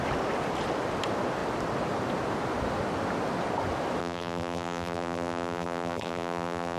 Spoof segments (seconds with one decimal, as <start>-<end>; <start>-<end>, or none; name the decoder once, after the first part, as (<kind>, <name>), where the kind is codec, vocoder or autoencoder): 4.0-6.8 (vocoder, BigVGAN v2)